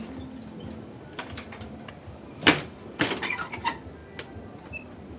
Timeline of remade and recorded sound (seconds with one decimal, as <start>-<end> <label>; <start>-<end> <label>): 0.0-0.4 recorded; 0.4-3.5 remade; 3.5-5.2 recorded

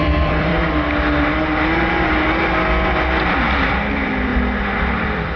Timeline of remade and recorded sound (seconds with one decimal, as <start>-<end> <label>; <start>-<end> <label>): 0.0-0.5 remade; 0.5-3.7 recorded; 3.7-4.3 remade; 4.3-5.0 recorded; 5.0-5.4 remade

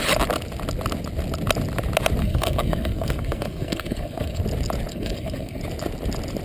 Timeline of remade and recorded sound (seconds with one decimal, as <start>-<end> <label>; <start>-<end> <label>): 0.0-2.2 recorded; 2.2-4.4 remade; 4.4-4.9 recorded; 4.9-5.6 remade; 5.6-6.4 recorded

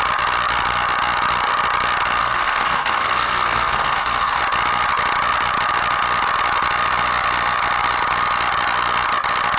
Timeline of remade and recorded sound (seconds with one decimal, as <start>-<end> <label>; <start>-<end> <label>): 0.0-2.2 recorded; 2.2-4.4 remade; 4.4-9.6 recorded